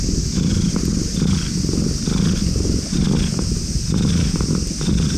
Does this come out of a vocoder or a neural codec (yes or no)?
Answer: no